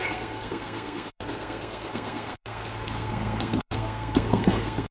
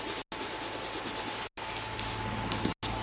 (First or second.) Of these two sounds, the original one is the second